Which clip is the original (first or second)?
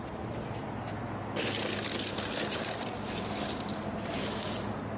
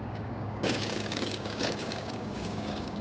first